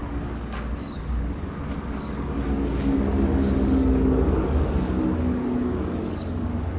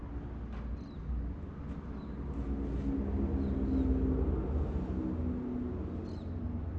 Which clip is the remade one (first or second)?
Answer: first